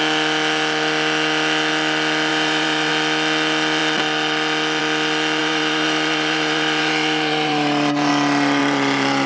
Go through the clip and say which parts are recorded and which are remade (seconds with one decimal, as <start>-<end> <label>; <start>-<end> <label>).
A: 0.0-2.3 recorded; 2.3-2.9 remade; 2.9-5.4 recorded; 5.4-8.1 remade; 8.1-8.6 recorded; 8.6-9.3 remade